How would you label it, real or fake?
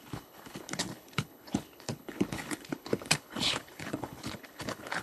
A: fake